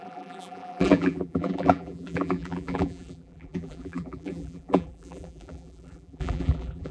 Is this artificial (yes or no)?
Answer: yes